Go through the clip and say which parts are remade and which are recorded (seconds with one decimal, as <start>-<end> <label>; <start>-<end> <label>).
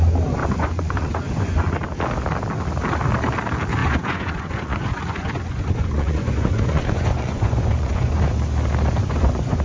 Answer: 0.0-0.4 recorded; 0.4-1.6 remade; 1.6-3.8 recorded; 3.8-8.2 remade; 8.2-9.0 recorded; 9.0-9.6 remade